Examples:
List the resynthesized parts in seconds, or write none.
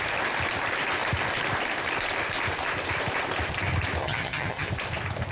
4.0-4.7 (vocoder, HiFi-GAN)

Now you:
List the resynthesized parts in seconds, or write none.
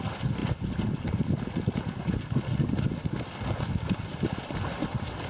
none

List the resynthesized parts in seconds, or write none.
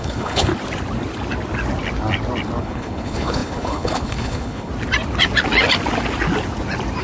0.0-0.5 (codec, HILCodec); 2.6-4.7